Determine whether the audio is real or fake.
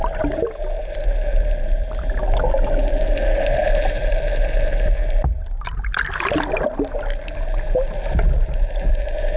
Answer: real